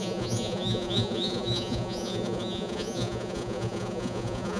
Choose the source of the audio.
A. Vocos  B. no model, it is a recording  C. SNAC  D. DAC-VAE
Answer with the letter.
A